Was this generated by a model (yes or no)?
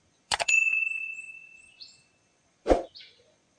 yes